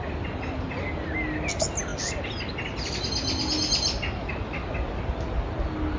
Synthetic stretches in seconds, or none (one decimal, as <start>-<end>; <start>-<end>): none